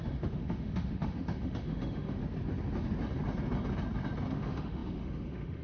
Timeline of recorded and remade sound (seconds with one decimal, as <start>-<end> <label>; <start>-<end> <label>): 0.0-2.2 remade; 2.2-4.3 recorded; 4.3-5.6 remade

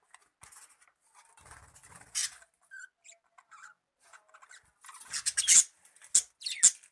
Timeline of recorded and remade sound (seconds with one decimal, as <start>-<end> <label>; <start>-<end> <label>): 0.0-6.9 recorded

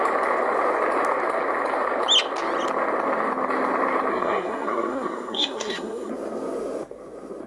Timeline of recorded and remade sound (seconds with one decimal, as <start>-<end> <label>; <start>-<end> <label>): 0.0-4.1 recorded; 4.1-6.1 remade; 6.1-7.5 recorded

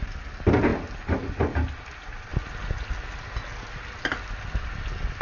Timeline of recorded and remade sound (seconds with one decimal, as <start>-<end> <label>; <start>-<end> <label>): 0.0-5.2 recorded

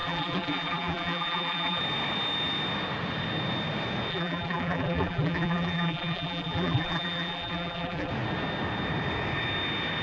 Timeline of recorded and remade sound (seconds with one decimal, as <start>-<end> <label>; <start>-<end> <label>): 0.0-1.8 remade; 1.8-4.1 recorded; 4.1-8.1 remade; 8.1-10.0 recorded